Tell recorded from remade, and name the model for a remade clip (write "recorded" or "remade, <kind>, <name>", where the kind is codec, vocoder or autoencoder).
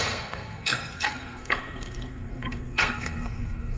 remade, codec, SNAC